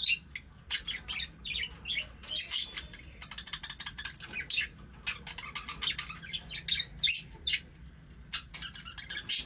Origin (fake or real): real